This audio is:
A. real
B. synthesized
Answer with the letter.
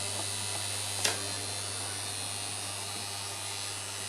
A